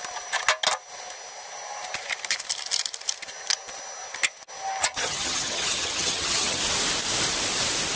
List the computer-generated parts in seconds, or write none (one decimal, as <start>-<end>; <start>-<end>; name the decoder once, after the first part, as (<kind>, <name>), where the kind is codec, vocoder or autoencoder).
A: 4.8-6.6 (vocoder, HiFi-GAN)